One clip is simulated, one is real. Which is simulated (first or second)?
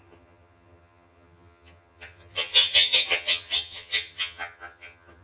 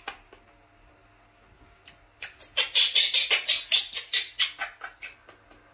first